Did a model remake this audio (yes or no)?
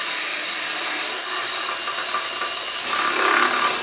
no